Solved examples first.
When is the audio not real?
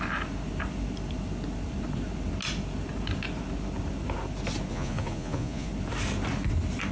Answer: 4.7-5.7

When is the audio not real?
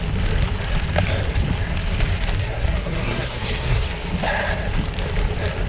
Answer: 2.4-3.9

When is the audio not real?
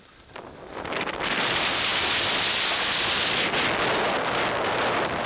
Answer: none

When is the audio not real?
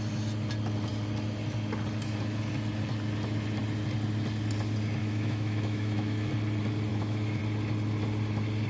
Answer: 5.0-6.3; 6.9-7.4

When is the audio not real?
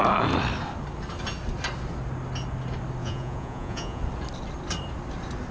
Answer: 3.0-4.0